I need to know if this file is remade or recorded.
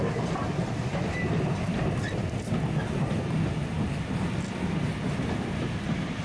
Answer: recorded